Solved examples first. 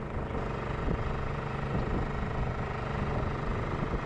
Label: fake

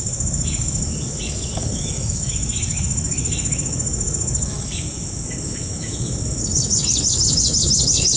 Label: fake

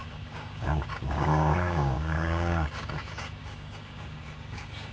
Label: fake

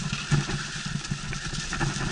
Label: real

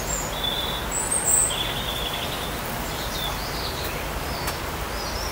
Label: real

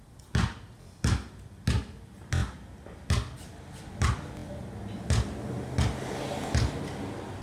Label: real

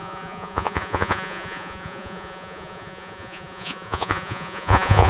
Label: fake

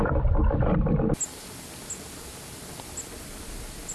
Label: real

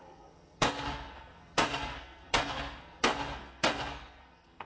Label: fake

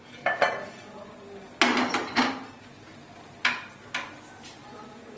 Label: real